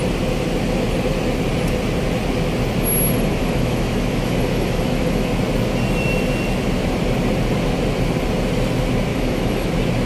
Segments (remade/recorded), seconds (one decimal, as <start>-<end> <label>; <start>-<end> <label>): 0.0-3.4 recorded; 3.4-5.3 remade; 5.3-9.1 recorded; 9.1-9.7 remade; 9.7-10.1 recorded